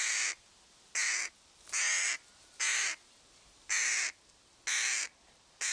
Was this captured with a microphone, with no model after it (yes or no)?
yes